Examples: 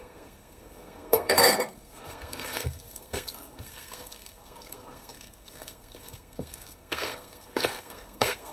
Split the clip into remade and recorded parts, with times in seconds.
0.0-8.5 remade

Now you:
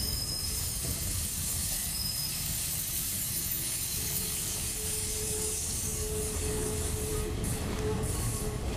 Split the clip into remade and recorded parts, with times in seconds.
0.0-8.8 remade

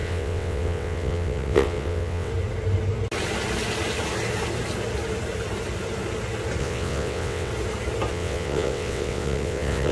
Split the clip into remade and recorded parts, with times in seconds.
0.0-2.3 remade; 2.3-6.6 recorded; 6.6-7.5 remade; 7.5-8.1 recorded; 8.1-9.9 remade

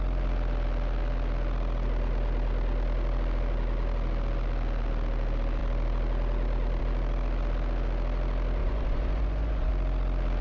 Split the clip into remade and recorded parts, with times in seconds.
0.0-8.6 recorded; 8.6-9.7 remade; 9.7-10.4 recorded